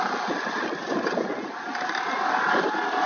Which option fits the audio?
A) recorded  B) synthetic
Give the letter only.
A